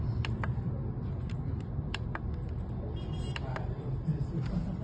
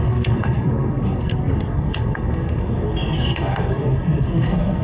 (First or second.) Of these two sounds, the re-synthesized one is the second